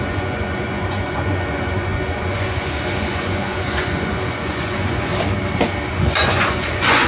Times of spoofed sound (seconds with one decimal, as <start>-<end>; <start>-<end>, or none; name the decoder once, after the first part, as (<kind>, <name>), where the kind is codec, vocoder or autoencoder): 0.0-5.1 (vocoder, Vocos); 5.9-7.1